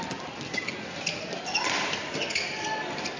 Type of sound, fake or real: real